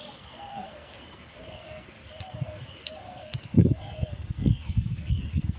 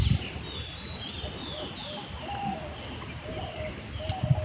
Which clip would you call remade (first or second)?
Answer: first